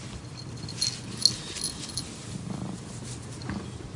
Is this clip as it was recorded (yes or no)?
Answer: yes